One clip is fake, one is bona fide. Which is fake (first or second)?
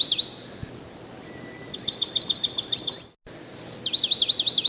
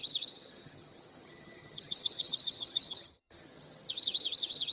second